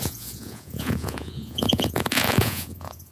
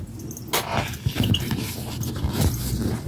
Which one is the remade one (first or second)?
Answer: first